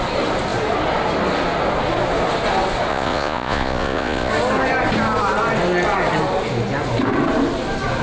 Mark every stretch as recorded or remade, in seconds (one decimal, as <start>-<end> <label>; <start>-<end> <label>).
0.0-2.9 recorded; 2.9-4.3 remade; 4.3-8.0 recorded